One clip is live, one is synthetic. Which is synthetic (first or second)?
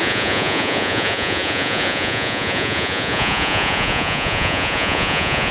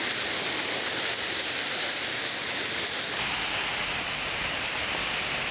first